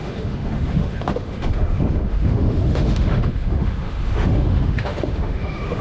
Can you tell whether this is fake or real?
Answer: fake